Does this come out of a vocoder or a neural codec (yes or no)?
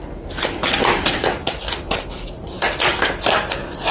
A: no